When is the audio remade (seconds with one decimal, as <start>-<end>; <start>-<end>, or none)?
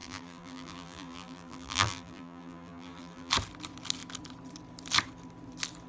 0.0-3.3